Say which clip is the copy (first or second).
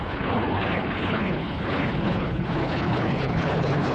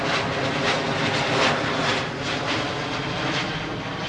first